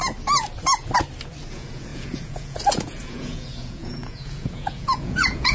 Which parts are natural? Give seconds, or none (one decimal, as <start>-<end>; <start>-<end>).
0.0-1.5